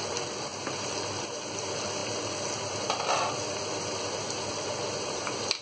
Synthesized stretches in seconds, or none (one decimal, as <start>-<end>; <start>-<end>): none